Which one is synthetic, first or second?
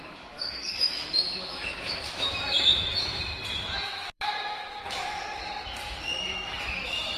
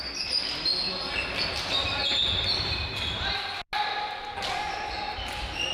first